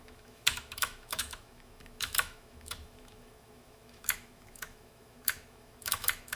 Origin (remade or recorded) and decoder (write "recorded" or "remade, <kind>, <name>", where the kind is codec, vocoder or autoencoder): remade, autoencoder, DAC-VAE